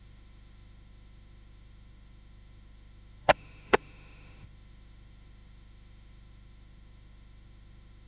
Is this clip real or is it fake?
fake